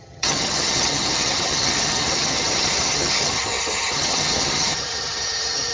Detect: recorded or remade remade